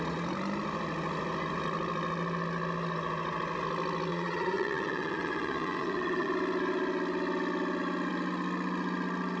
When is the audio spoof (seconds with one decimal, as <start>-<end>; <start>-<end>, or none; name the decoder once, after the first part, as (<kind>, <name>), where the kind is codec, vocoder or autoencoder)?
4.1-6.3 (vocoder, Vocos)